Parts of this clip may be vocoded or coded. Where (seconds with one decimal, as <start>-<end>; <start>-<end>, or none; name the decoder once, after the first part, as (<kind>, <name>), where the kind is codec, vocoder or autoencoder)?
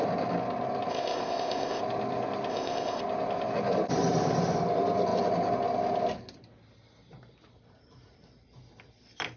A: 0.9-1.8 (codec, ZipCodec); 2.5-3.0